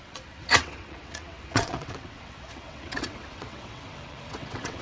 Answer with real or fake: fake